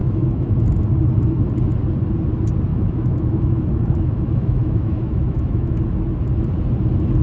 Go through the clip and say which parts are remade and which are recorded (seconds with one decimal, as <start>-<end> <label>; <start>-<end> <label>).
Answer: 0.0-0.6 remade; 0.6-2.7 recorded; 2.7-5.8 remade; 5.8-7.2 recorded